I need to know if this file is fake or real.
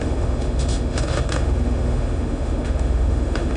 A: fake